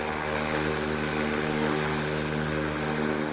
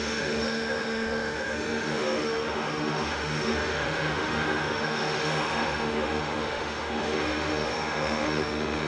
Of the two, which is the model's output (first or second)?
second